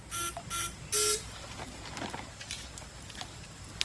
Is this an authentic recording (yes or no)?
yes